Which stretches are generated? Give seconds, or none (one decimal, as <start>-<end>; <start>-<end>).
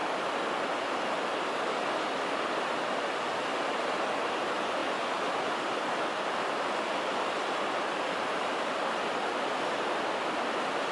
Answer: 4.8-9.4